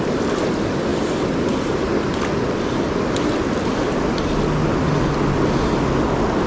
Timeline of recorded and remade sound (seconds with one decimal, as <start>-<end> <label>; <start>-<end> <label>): 0.0-6.5 recorded